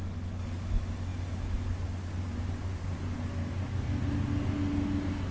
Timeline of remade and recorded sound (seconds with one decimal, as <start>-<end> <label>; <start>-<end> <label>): 0.0-3.4 recorded; 3.4-4.0 remade; 4.0-5.3 recorded